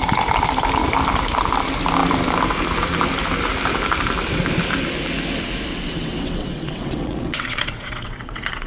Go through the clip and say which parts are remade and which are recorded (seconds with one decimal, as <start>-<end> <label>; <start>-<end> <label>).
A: 0.0-5.7 recorded; 5.7-8.7 remade